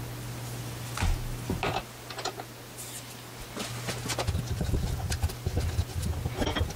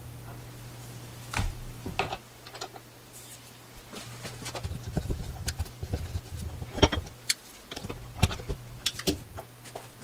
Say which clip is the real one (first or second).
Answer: first